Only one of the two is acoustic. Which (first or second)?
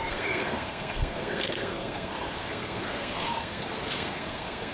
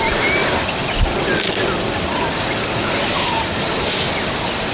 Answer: second